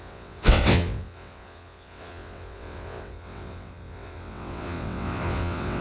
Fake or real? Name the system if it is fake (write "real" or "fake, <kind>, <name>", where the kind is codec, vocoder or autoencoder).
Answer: fake, vocoder, WaveNeXt